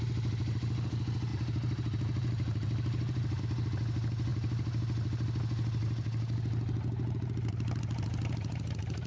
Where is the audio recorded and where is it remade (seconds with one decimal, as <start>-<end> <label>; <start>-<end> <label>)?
0.0-1.3 recorded; 1.3-3.4 remade; 3.4-9.1 recorded